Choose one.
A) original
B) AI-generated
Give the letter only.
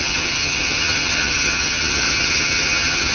B